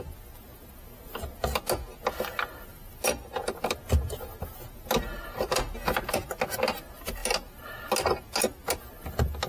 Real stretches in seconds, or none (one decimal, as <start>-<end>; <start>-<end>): 0.0-9.5